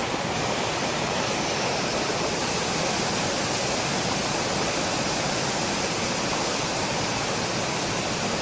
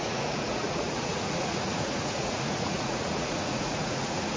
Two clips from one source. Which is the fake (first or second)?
second